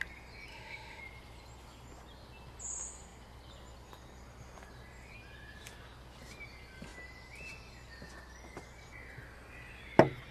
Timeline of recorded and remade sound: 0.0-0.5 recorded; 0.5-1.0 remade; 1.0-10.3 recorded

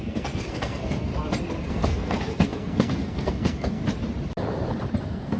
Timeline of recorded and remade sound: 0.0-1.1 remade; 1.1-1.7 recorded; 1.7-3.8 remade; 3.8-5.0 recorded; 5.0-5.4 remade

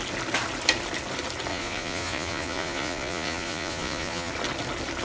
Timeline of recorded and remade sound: 0.0-1.5 recorded; 1.5-4.3 remade; 4.3-5.0 recorded